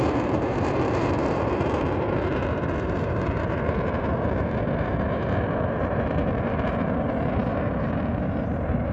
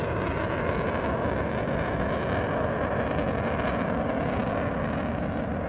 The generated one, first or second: first